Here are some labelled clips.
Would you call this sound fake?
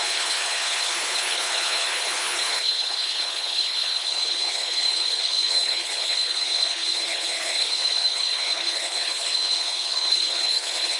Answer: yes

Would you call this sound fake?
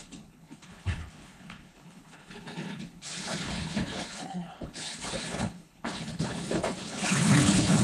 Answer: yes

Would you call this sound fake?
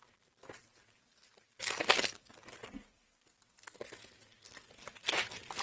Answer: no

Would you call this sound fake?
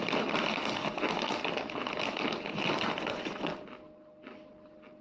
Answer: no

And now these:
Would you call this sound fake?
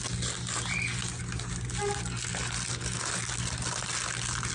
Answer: no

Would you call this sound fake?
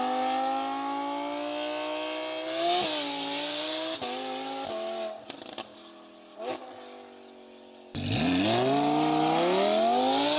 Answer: no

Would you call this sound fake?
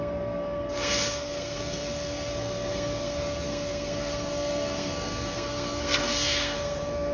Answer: yes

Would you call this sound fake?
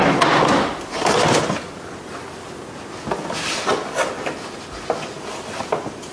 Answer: no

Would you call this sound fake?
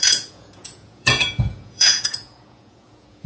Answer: yes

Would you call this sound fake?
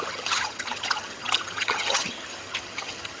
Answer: yes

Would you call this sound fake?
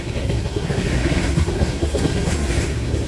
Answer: yes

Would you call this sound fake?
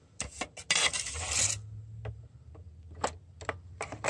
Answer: no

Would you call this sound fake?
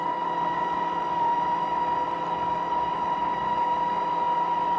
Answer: no